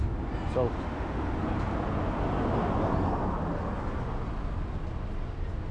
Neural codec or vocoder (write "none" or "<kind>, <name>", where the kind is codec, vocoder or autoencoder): none